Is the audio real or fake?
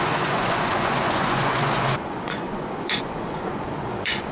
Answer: fake